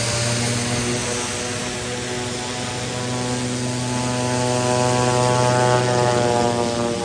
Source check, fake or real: real